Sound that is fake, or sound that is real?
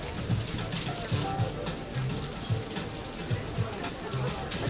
real